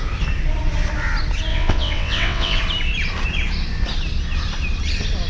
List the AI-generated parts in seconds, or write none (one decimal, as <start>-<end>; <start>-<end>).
1.5-2.6